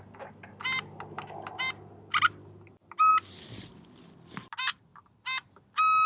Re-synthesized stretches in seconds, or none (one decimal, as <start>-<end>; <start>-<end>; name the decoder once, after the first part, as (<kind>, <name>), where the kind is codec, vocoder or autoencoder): none